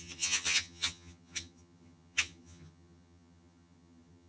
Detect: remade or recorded remade